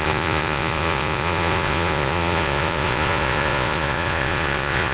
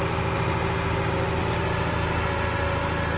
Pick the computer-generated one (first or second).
first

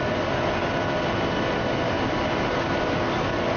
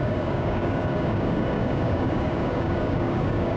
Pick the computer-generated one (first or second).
second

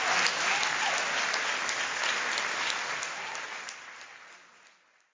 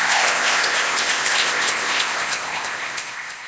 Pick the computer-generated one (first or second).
second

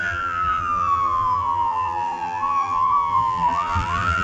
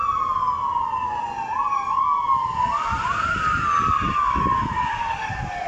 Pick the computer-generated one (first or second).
first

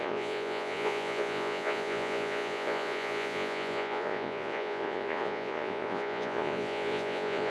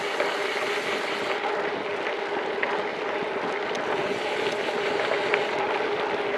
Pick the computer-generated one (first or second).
first